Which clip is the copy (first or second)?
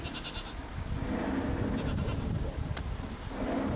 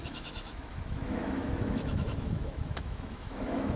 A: second